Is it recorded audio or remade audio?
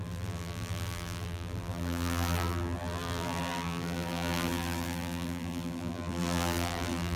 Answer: remade